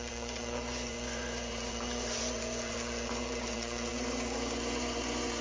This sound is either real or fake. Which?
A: fake